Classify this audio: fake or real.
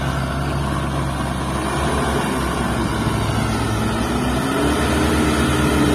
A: real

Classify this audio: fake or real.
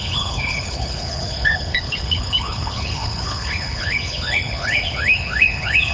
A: fake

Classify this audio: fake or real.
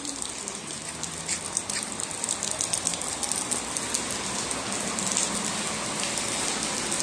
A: real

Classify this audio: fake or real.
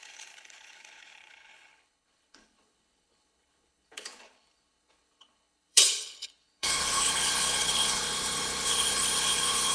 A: fake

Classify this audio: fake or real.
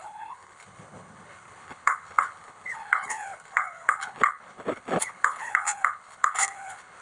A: fake